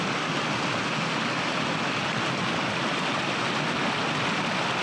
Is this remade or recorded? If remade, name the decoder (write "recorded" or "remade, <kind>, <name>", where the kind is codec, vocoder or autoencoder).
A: recorded